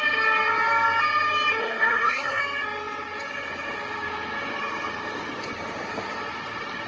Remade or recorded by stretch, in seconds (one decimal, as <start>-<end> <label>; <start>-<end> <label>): 0.0-1.6 recorded; 1.6-2.4 remade; 2.4-6.9 recorded